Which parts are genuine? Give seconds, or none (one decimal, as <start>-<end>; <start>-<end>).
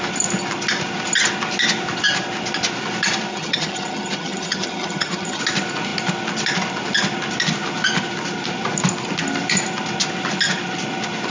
0.0-3.3; 5.4-11.3